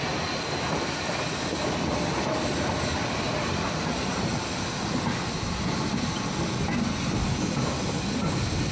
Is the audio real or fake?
real